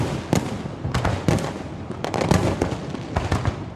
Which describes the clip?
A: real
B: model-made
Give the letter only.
A